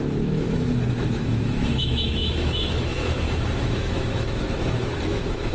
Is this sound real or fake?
fake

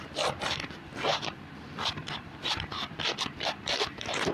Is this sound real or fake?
fake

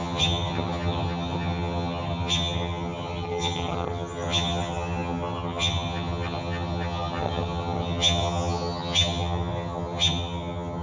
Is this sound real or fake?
fake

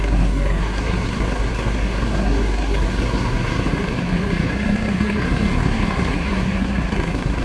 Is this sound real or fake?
fake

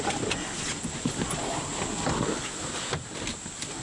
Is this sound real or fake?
real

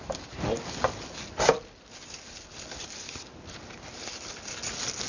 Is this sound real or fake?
real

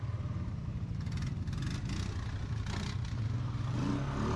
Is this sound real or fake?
real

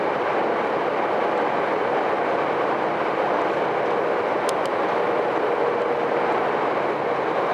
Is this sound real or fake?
real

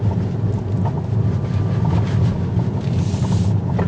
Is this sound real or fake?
real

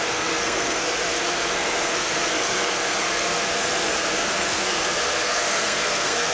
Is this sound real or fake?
fake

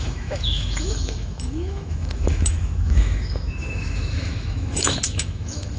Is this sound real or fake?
fake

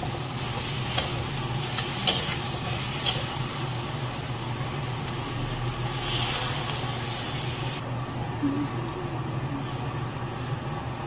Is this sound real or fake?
real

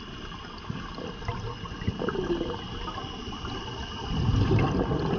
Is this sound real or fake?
real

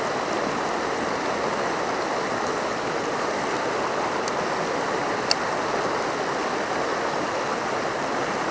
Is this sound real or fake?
real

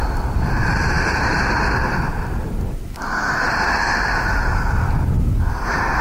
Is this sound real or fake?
real